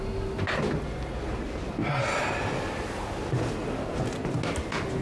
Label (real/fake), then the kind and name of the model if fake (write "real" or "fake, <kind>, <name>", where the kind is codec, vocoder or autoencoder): real